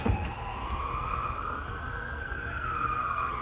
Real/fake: fake